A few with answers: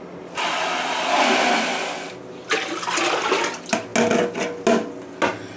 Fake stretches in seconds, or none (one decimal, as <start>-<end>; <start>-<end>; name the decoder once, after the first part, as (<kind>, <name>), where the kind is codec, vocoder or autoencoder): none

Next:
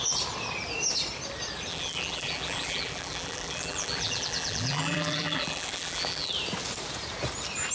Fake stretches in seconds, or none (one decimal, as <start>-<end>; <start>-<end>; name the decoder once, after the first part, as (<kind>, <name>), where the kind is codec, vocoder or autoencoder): 1.7-6.3 (vocoder, BigVGAN v2)

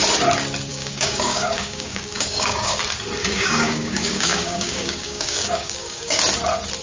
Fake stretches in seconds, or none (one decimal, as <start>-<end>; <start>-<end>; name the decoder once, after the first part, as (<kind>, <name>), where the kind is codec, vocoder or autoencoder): 0.7-2.8 (codec, DAC); 3.2-6.2